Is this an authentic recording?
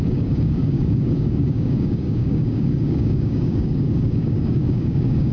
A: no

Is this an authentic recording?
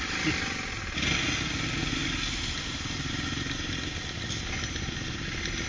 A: yes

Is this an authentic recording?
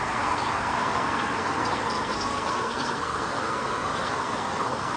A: no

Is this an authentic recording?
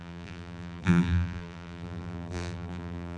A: no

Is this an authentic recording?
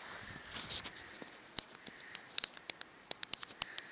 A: yes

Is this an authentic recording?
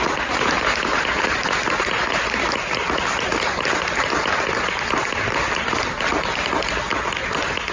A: yes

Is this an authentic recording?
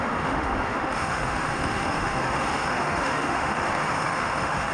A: no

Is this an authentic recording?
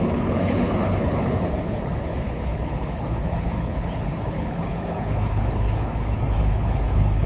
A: no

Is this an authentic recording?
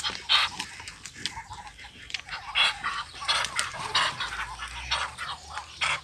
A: yes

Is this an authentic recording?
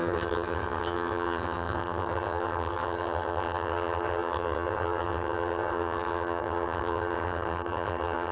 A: no